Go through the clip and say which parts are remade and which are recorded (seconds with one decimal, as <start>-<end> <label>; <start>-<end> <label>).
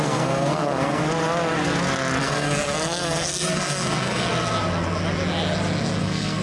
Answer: 0.0-1.0 remade; 1.0-2.2 recorded; 2.2-4.3 remade; 4.3-6.0 recorded; 6.0-6.4 remade